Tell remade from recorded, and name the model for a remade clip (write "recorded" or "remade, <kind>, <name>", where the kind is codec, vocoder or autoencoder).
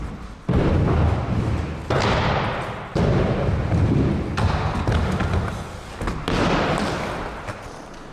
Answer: recorded